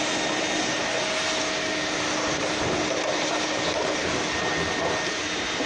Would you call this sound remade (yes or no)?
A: no